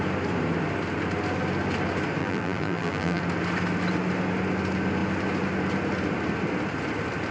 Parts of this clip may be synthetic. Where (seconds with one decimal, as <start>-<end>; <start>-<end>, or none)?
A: 2.2-3.2